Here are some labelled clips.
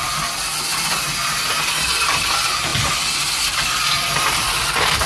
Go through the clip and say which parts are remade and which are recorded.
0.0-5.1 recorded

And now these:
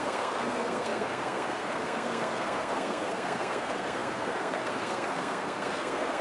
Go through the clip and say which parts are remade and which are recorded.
0.0-6.2 remade